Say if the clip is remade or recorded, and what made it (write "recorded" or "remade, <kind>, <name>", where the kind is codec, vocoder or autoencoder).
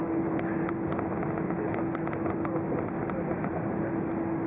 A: recorded